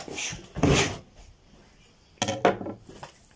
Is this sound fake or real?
real